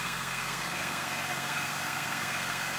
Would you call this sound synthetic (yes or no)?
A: yes